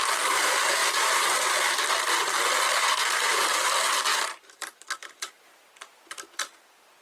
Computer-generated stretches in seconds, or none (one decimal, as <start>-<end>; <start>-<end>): 4.1-5.3

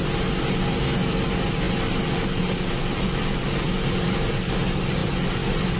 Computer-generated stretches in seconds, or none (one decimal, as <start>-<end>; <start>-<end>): none

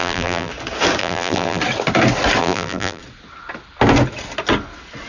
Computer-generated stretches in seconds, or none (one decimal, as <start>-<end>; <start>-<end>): 0.0-0.5; 1.0-1.6; 2.4-3.0

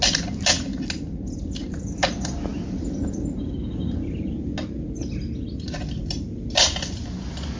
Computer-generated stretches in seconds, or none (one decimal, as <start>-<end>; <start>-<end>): none

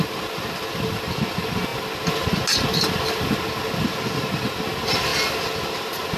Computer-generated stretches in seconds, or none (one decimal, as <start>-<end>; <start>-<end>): none

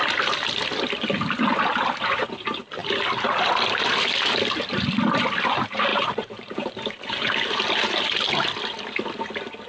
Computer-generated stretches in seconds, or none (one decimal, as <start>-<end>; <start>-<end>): 5.9-8.0

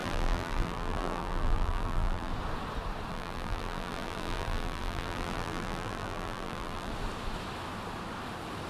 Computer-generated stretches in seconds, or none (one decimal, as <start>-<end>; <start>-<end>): 0.0-2.3; 3.1-6.9